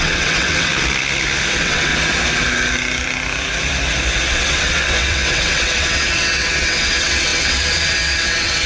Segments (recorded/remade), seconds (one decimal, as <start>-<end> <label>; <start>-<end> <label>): 0.0-0.7 remade; 0.7-1.5 recorded; 1.5-1.9 remade; 1.9-4.3 recorded; 4.3-8.7 remade